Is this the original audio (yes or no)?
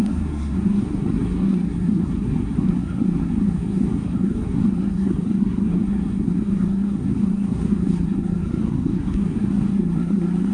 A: no